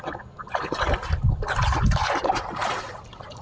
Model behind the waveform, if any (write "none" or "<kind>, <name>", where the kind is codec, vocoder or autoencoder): none